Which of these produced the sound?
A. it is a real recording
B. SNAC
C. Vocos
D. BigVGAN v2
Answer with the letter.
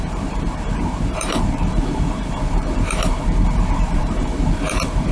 D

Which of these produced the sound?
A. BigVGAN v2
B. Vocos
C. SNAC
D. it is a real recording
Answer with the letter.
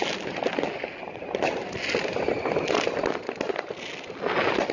D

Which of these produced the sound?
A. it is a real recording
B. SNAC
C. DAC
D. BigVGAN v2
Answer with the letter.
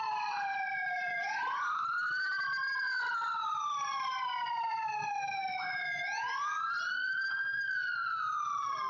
A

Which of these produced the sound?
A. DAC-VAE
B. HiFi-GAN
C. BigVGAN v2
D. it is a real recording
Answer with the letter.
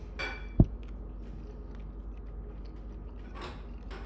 D